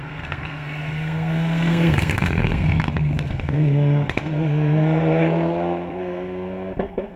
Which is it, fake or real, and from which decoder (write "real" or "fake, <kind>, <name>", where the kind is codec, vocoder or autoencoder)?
fake, codec, SNAC